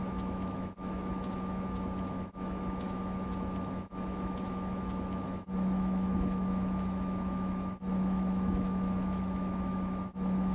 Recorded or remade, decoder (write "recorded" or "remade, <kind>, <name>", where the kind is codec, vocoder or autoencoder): remade, autoencoder, DAC-VAE